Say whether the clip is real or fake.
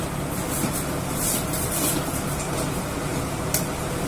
fake